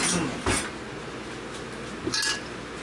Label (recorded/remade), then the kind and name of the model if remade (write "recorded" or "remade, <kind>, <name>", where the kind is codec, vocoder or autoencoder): recorded